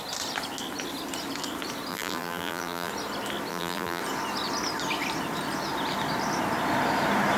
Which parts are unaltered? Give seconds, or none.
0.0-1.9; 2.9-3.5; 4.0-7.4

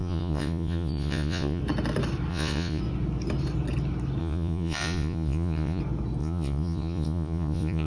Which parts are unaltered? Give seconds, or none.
1.6-2.3; 2.8-4.2; 5.8-6.2

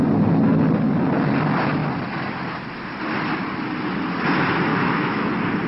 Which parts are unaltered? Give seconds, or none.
0.0-4.7; 5.3-5.7

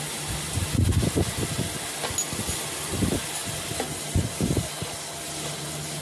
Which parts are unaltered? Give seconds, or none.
0.0-6.0

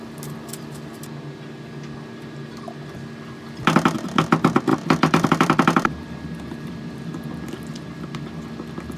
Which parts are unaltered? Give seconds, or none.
0.0-4.7; 7.1-9.0

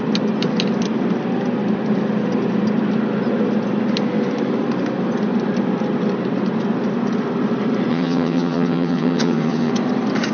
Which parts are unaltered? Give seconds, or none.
0.0-7.9; 9.7-10.3